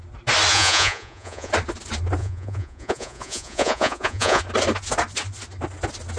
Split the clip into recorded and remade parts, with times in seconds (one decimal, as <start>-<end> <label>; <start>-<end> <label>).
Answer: 0.0-0.5 recorded; 0.5-1.5 remade; 1.5-2.2 recorded; 2.2-4.4 remade; 4.4-6.2 recorded